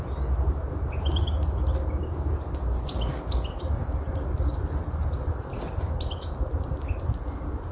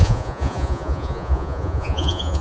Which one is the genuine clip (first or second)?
first